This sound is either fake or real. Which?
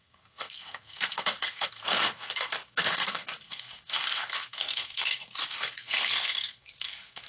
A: fake